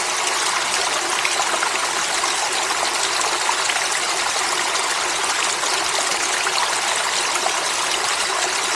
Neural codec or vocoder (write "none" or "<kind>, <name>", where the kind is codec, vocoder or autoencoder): none